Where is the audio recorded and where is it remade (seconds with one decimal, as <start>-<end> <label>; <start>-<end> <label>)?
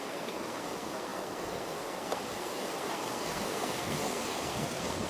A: 0.0-5.1 remade